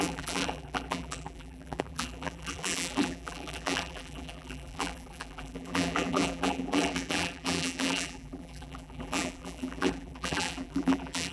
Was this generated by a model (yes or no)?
yes